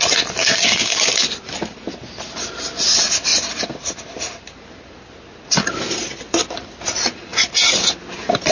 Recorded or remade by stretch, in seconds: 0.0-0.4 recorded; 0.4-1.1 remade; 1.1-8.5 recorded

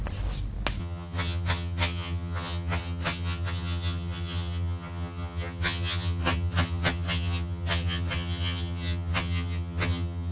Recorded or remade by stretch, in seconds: 0.0-0.8 recorded; 0.8-10.3 remade